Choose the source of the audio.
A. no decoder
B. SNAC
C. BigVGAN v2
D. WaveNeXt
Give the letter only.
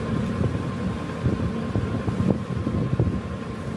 A